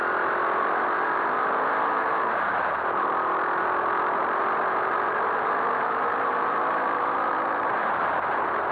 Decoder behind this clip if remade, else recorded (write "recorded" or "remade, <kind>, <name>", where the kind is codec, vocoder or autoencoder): remade, vocoder, BigVGAN v2